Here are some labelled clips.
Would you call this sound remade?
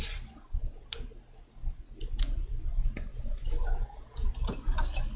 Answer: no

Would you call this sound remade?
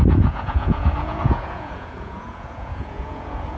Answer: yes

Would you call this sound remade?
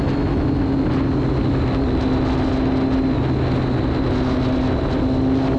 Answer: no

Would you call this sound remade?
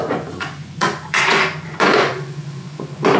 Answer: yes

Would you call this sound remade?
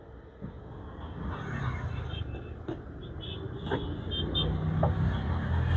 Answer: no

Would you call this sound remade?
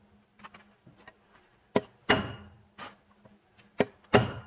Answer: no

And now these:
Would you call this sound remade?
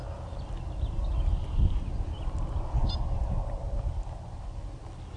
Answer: no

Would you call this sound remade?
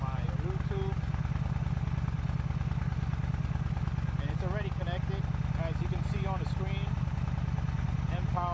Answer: no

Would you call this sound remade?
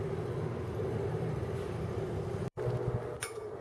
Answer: no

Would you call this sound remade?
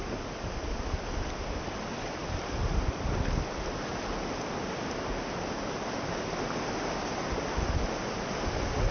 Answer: no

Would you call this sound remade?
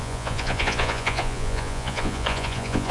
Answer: yes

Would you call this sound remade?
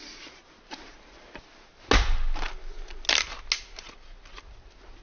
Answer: no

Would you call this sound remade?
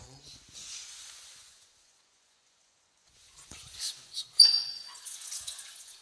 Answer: yes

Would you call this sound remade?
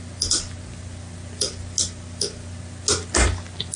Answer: no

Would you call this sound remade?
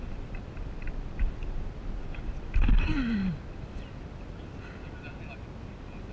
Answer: no